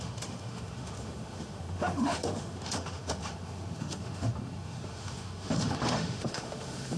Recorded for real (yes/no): no